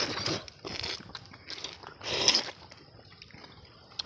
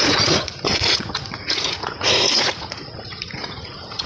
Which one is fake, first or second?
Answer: second